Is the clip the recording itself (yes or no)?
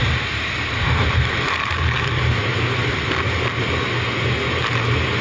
yes